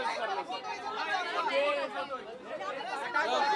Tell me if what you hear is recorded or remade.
recorded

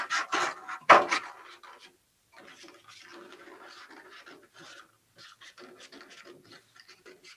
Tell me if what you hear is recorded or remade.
recorded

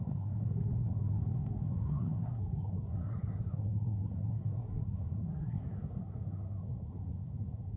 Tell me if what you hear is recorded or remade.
remade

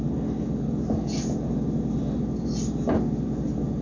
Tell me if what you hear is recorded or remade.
recorded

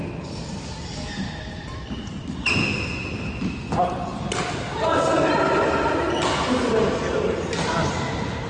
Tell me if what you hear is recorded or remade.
recorded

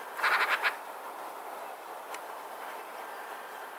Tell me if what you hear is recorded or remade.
recorded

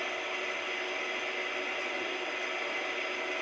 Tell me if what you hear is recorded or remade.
recorded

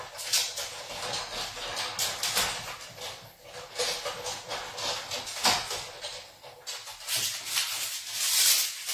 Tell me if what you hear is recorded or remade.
recorded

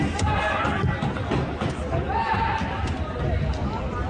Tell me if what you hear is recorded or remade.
recorded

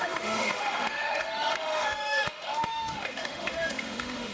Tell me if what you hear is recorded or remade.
remade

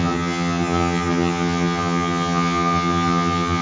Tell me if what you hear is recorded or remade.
remade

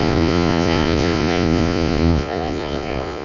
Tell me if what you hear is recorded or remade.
remade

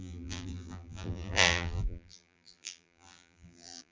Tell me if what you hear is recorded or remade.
remade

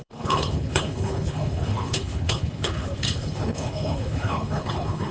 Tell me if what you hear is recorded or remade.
remade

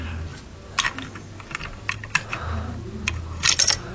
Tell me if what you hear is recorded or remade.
recorded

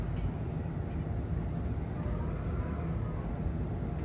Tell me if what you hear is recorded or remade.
recorded